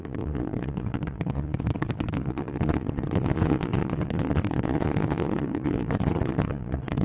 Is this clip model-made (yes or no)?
yes